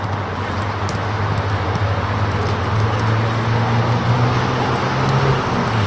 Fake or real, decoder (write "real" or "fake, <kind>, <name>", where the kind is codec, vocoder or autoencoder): real